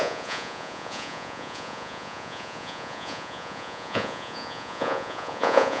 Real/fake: fake